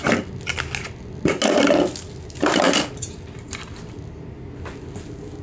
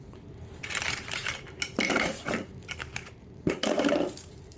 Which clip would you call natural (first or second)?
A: first